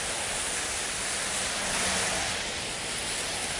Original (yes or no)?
yes